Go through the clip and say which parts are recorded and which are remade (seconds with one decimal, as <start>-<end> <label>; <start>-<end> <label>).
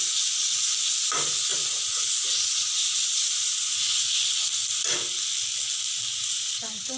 0.0-1.5 recorded; 1.5-4.0 remade; 4.0-6.1 recorded; 6.1-7.0 remade